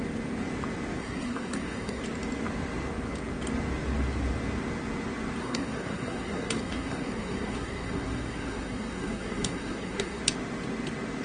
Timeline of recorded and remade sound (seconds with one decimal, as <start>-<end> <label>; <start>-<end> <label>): 0.0-1.0 recorded; 1.0-2.0 remade; 2.0-5.4 recorded; 5.4-10.2 remade; 10.2-11.2 recorded